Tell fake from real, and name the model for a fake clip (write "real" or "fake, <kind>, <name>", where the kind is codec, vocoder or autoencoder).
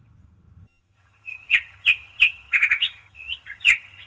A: fake, vocoder, HiFi-GAN